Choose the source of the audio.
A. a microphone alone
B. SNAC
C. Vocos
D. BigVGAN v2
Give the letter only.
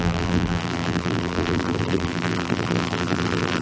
D